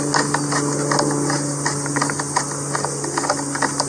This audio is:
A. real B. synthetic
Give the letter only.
A